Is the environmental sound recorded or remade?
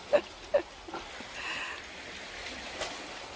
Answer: recorded